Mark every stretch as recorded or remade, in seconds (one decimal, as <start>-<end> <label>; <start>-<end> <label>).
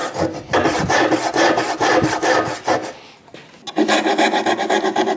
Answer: 0.0-5.2 recorded